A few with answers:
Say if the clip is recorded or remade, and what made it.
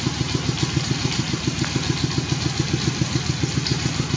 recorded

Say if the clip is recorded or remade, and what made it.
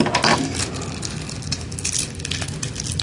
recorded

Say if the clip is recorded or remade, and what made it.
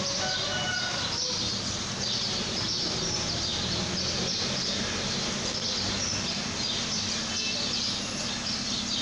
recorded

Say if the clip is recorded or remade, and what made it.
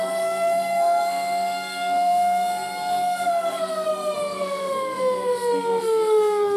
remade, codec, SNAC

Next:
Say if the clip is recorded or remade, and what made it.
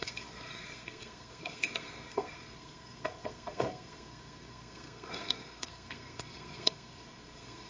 remade, codec, SNAC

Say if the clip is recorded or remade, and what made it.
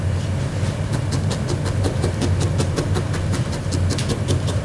recorded